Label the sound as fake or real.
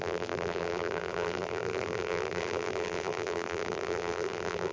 fake